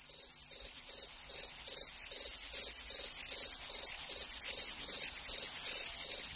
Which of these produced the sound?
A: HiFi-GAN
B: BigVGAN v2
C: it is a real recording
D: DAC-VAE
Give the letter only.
C